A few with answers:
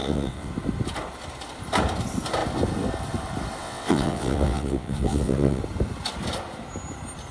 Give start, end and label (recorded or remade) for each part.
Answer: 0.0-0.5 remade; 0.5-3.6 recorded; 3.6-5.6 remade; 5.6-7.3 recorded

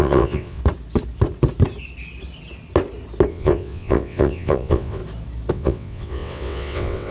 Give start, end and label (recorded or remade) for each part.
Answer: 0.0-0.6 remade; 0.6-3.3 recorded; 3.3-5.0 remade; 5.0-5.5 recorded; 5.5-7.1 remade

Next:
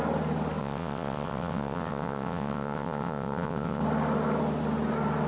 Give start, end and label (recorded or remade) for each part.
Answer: 0.0-0.6 recorded; 0.6-3.8 remade; 3.8-5.3 recorded